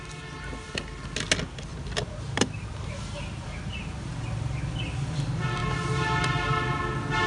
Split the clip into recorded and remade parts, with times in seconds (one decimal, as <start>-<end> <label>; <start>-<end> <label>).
0.0-7.3 recorded